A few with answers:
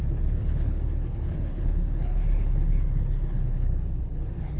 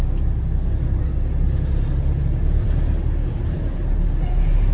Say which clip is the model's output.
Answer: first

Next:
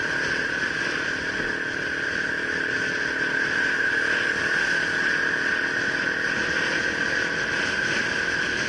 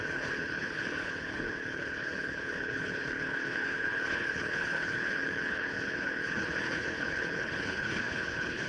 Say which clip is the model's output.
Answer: second